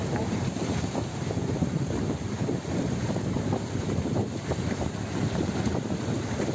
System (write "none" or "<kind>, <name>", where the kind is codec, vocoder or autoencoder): vocoder, BigVGAN v2